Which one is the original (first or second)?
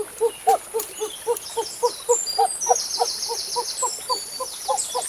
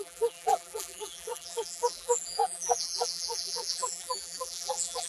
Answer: first